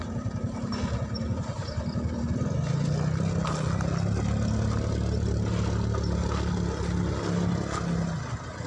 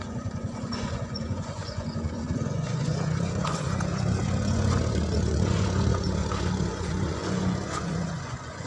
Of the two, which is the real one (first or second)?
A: first